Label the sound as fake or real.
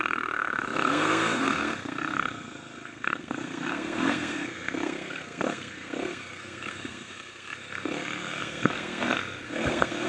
fake